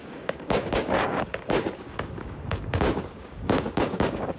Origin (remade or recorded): remade